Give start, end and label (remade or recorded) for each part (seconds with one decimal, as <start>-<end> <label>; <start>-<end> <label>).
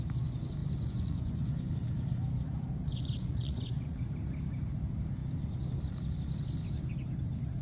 0.0-0.6 recorded; 0.6-1.7 remade; 1.7-2.8 recorded; 2.8-4.1 remade; 4.1-7.6 recorded